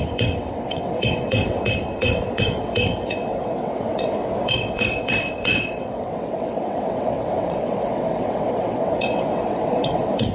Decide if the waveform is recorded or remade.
remade